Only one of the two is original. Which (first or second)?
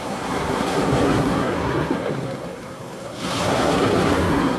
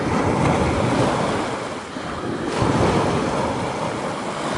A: second